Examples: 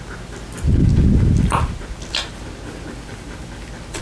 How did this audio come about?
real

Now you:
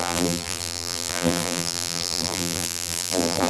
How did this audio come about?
fake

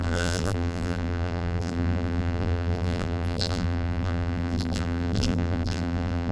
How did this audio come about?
fake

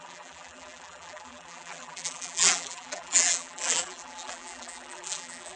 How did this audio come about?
fake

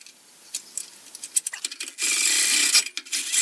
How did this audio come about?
real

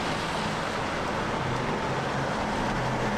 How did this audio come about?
real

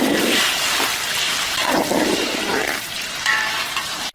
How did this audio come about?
fake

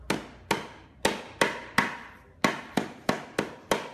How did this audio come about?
real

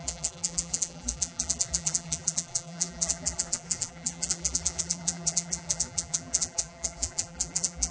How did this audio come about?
fake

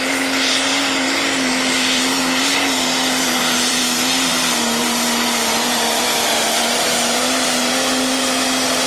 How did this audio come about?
fake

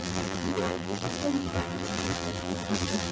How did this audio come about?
fake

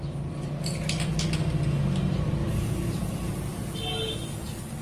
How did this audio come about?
real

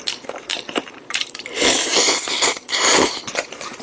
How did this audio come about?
fake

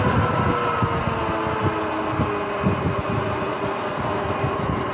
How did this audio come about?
real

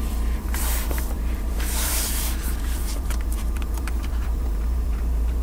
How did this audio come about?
fake